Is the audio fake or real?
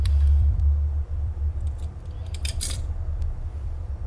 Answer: fake